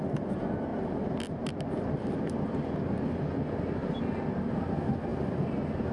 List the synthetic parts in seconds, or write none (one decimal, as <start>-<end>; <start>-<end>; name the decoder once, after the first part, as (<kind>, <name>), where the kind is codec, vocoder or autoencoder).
none